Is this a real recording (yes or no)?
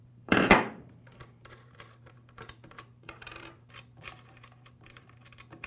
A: no